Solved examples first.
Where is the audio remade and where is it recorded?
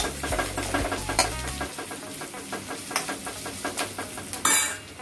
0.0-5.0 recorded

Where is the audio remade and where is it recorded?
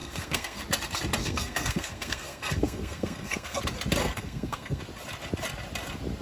0.0-0.6 remade; 0.6-1.2 recorded; 1.2-3.6 remade; 3.6-4.0 recorded; 4.0-4.8 remade; 4.8-6.2 recorded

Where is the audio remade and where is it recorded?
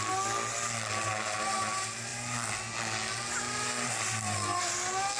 0.0-5.2 recorded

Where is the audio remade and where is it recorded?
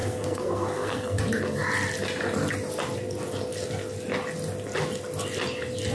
0.0-1.2 remade; 1.2-5.9 recorded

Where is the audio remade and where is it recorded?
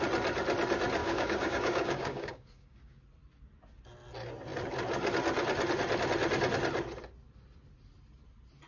0.0-1.0 recorded; 1.0-3.0 remade; 3.0-8.7 recorded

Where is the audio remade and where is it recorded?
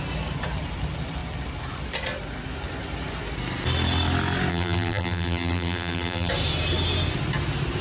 0.0-4.5 recorded; 4.5-6.3 remade; 6.3-7.8 recorded